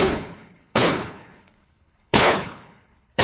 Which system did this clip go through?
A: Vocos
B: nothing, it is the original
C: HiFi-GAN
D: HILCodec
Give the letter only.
D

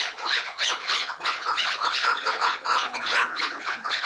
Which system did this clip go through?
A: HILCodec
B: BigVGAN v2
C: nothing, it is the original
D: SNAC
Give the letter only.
A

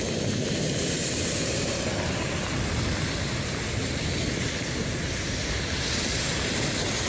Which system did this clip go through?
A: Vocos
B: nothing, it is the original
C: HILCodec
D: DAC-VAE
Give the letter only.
B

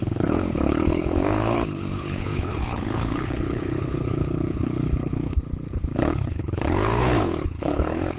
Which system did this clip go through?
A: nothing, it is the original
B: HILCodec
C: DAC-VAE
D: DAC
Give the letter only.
B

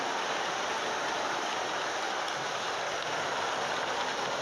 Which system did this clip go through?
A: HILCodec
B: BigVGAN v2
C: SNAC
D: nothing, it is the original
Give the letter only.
D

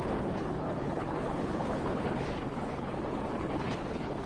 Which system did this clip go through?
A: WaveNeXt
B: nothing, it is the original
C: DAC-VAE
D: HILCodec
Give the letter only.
D